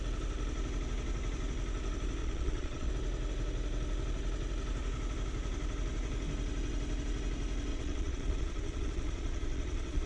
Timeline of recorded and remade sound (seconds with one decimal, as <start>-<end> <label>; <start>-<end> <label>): 0.0-2.2 recorded; 2.2-2.9 remade; 2.9-7.7 recorded; 7.7-10.1 remade